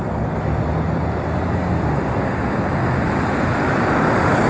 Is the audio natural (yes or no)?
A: yes